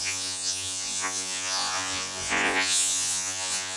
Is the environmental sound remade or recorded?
remade